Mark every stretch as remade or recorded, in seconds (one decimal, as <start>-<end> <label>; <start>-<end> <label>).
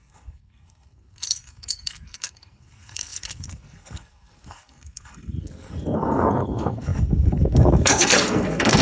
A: 0.0-8.8 remade